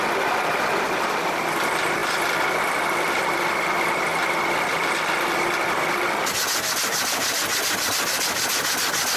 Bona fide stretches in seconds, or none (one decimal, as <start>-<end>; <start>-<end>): 0.0-9.2

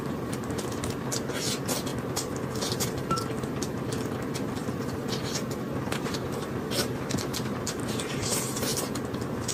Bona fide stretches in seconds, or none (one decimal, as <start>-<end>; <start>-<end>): 1.9-5.8; 8.7-9.5

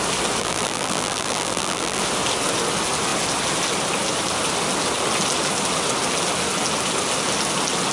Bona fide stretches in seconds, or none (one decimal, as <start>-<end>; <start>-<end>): 0.0-0.4; 2.0-7.9

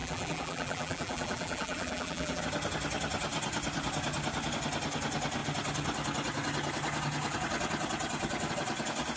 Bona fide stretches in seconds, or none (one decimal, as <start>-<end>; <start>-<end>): 2.4-9.2